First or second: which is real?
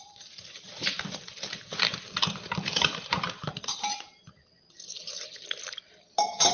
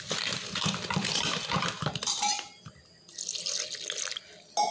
second